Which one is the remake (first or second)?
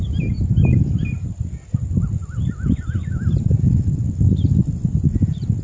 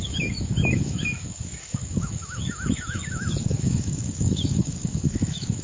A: second